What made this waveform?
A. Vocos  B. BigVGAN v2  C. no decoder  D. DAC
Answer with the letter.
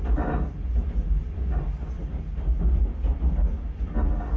C